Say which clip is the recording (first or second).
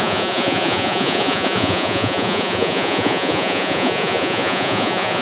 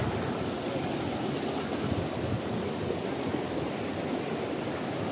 second